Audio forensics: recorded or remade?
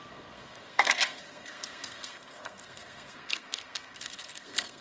remade